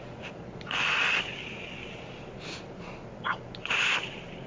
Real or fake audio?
real